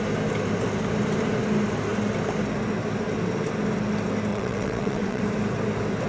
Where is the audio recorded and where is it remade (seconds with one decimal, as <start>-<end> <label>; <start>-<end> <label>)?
0.0-4.3 recorded; 4.3-5.2 remade; 5.2-6.1 recorded